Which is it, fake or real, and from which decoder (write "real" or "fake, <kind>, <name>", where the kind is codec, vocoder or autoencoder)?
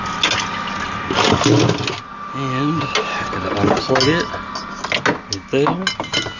real